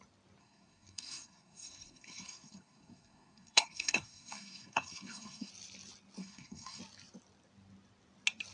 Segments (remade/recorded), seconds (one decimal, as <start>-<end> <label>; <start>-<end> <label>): 0.0-0.4 recorded; 0.4-5.5 remade; 5.5-6.2 recorded; 6.2-6.8 remade; 6.8-8.5 recorded